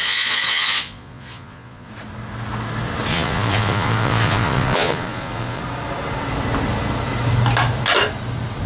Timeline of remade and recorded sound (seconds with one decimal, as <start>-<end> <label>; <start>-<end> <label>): 0.0-1.9 remade; 1.9-3.1 recorded; 3.1-5.6 remade; 5.6-8.7 recorded